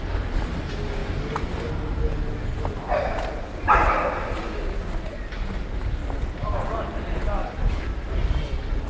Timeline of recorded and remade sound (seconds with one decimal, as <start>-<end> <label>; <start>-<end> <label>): 0.0-4.4 recorded; 4.4-4.9 remade; 4.9-8.9 recorded